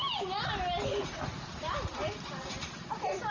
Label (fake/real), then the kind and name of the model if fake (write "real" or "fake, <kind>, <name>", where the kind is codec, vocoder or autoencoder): real